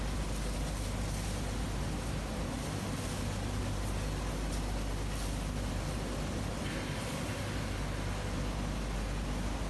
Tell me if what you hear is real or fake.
real